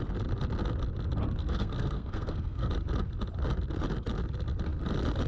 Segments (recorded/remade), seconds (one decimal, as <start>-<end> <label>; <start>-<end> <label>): 0.0-1.4 recorded; 1.4-2.7 remade; 2.7-5.3 recorded